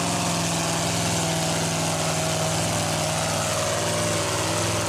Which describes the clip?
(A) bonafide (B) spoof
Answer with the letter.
A